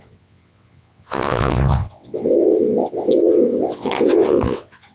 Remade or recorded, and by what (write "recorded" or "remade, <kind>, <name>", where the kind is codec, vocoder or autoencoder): remade, vocoder, WaveNeXt